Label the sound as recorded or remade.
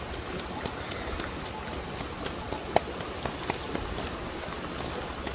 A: recorded